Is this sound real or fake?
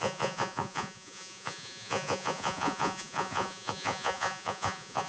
fake